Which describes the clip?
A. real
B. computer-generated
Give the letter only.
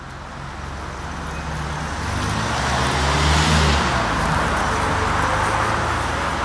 A